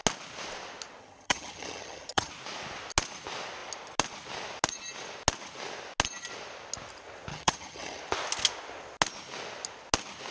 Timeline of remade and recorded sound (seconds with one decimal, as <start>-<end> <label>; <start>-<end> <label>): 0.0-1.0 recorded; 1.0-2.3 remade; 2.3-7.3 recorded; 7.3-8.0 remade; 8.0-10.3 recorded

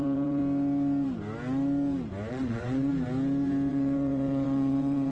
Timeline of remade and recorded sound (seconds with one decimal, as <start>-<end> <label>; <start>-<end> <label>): 0.0-0.4 remade; 0.4-2.3 recorded; 2.3-2.9 remade; 2.9-3.7 recorded; 3.7-5.1 remade

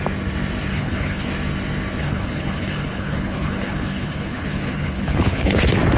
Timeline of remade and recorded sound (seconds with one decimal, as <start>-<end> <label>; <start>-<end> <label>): 0.0-0.7 recorded; 0.7-1.3 remade; 1.3-2.0 recorded; 2.0-5.6 remade; 5.6-6.0 recorded

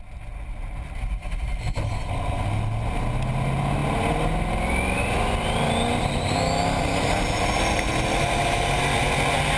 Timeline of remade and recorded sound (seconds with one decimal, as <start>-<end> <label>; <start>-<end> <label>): 0.0-9.6 recorded

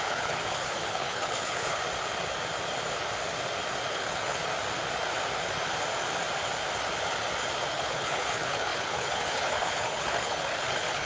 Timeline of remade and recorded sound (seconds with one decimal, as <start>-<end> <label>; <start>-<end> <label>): 0.0-1.8 remade; 1.8-3.9 recorded; 3.9-4.4 remade; 4.4-7.7 recorded; 7.7-11.1 remade

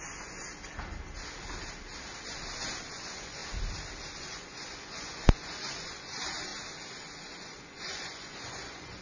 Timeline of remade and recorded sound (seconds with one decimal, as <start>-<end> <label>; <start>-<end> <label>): 0.0-0.5 remade; 0.5-2.9 recorded; 2.9-3.4 remade; 3.4-4.2 recorded; 4.2-6.5 remade; 6.5-7.2 recorded; 7.2-9.0 remade

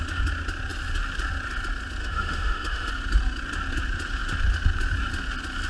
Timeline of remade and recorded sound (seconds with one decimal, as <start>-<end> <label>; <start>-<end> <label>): 0.0-2.0 recorded; 2.0-2.9 remade; 2.9-5.7 recorded